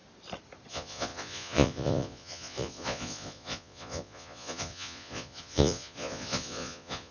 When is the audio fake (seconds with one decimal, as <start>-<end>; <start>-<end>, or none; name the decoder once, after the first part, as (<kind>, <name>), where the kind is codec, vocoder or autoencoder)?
0.7-7.1 (vocoder, Vocos)